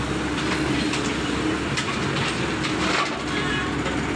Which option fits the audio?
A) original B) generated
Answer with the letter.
A